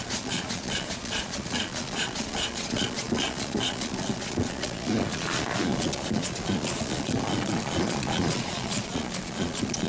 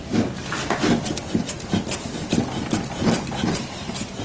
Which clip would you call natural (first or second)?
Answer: second